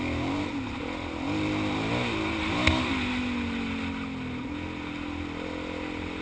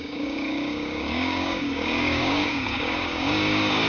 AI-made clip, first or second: second